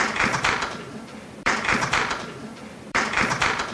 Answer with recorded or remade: remade